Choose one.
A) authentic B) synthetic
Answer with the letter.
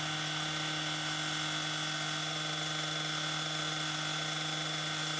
A